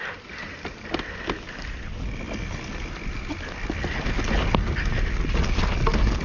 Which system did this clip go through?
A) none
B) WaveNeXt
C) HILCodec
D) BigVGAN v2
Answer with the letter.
A